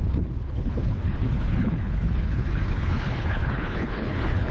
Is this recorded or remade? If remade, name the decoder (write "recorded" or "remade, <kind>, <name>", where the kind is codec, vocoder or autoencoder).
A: remade, codec, HILCodec